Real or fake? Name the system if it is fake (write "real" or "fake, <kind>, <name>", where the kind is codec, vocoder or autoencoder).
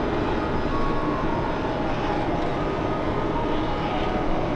real